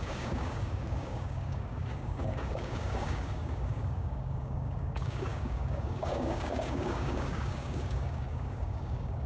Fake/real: fake